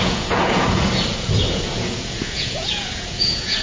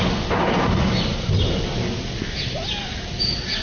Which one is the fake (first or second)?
first